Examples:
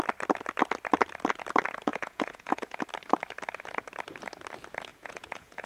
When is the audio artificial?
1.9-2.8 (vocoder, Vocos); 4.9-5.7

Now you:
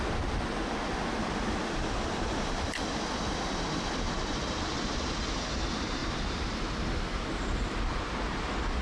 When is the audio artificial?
6.0-7.8 (vocoder, BigVGAN v2)

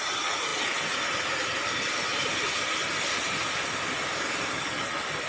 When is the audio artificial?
none